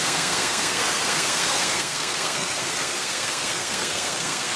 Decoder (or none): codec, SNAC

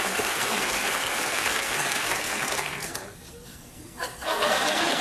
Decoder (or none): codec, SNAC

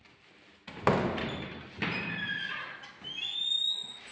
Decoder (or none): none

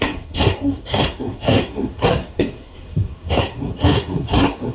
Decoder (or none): codec, SNAC